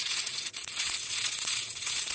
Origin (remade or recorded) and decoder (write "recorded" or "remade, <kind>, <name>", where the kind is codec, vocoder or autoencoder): remade, vocoder, WaveNeXt